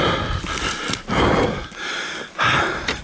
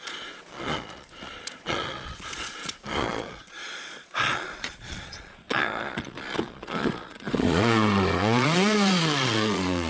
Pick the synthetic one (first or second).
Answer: second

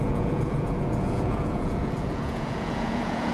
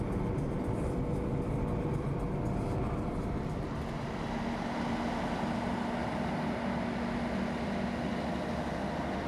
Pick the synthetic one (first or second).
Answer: first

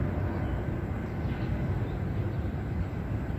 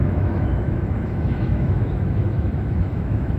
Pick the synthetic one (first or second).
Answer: second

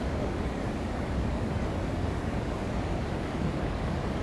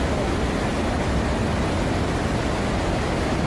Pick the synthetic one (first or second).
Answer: first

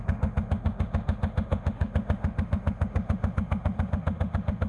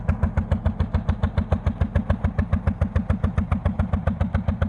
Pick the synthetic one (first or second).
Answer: first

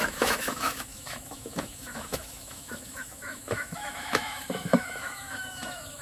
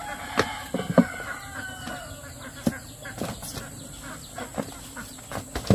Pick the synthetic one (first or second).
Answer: first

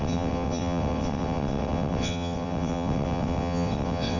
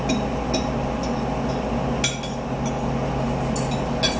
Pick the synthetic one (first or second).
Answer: first